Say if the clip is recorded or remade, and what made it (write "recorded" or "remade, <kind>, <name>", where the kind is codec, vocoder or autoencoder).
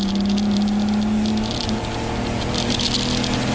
recorded